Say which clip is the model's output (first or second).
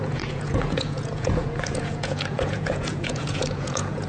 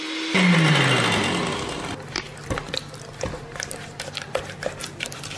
first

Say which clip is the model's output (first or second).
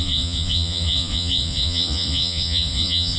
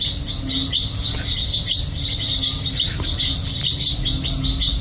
first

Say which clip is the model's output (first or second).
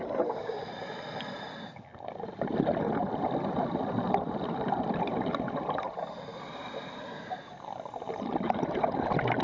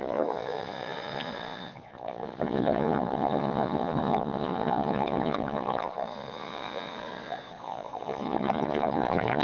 second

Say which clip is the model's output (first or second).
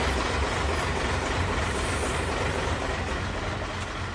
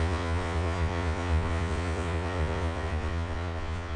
second